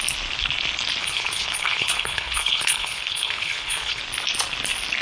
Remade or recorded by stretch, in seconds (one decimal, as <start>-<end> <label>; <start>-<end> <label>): 0.0-1.0 recorded; 1.0-4.0 remade; 4.0-5.0 recorded